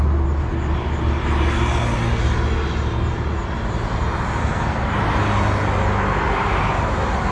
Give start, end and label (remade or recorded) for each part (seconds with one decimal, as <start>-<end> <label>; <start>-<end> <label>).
0.0-4.4 recorded; 4.4-4.9 remade; 4.9-7.3 recorded